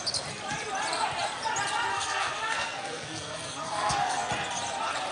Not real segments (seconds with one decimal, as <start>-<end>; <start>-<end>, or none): 1.9-4.3